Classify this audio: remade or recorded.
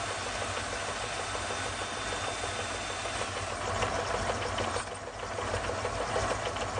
recorded